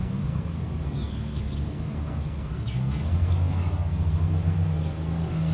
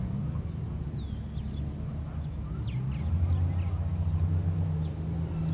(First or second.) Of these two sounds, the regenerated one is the first